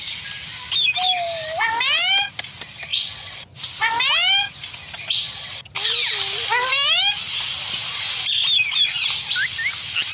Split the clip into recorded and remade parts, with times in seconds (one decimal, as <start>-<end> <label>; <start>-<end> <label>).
0.0-2.9 recorded; 2.9-3.9 remade; 3.9-10.1 recorded